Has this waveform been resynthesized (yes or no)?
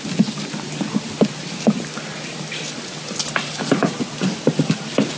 no